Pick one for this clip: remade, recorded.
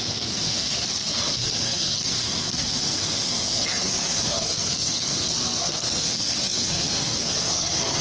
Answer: remade